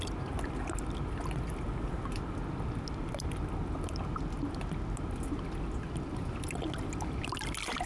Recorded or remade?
recorded